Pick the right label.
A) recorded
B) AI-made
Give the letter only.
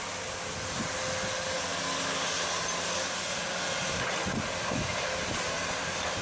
A